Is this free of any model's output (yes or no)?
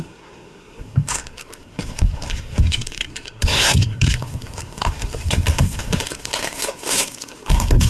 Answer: no